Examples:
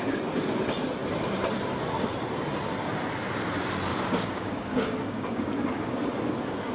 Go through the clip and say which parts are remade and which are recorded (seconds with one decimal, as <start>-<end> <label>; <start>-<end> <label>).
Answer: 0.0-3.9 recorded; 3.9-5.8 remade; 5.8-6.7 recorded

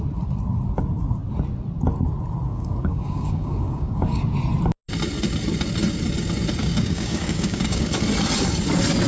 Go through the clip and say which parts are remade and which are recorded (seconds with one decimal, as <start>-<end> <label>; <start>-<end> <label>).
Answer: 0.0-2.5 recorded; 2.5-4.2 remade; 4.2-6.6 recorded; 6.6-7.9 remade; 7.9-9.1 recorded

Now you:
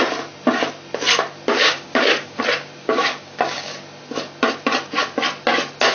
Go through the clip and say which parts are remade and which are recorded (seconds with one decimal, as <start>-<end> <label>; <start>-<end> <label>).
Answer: 0.0-1.6 recorded; 1.6-2.4 remade; 2.4-2.8 recorded; 2.8-3.7 remade; 3.7-5.9 recorded

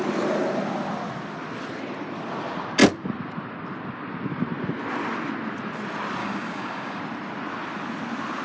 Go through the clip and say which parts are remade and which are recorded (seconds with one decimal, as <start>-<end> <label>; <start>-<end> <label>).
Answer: 0.0-6.2 recorded; 6.2-7.0 remade; 7.0-8.4 recorded

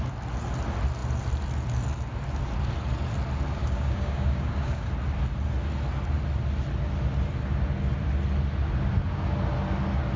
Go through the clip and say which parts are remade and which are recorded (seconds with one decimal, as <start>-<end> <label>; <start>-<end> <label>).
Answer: 0.0-3.6 recorded; 3.6-4.9 remade; 4.9-10.2 recorded

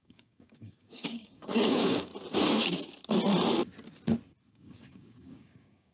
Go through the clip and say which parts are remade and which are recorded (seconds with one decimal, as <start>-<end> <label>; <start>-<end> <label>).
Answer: 0.0-2.1 remade; 2.1-4.5 recorded; 4.5-5.9 remade